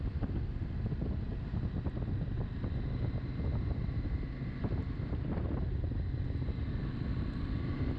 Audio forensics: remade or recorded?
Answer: recorded